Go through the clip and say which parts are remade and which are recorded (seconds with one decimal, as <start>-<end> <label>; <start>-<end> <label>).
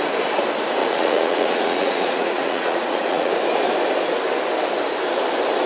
0.0-0.8 recorded; 0.8-3.3 remade; 3.3-5.7 recorded